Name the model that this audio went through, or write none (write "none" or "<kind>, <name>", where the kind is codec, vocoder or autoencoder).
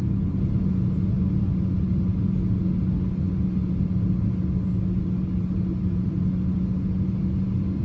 none